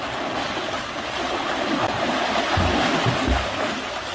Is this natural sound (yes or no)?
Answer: yes